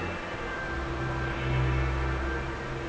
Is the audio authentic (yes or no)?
yes